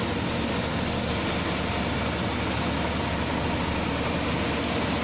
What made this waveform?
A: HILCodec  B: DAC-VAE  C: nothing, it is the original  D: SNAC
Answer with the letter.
C